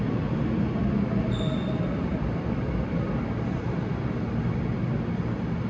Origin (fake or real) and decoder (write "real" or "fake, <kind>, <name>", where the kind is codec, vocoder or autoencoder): real